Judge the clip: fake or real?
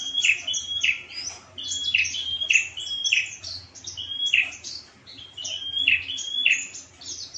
real